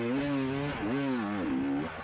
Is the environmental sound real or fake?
real